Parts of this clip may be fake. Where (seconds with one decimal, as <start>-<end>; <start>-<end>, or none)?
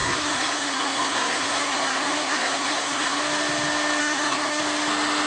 0.0-3.2; 4.0-4.6